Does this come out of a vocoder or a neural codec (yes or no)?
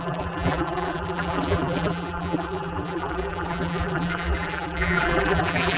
yes